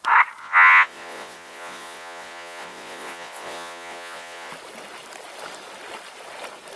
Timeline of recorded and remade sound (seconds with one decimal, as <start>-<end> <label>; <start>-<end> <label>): 0.0-0.4 recorded; 0.4-4.5 remade; 4.5-6.8 recorded